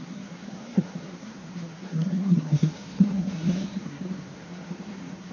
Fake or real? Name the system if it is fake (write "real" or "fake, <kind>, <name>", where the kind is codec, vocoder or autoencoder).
fake, codec, SNAC